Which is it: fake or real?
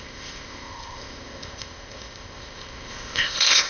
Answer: fake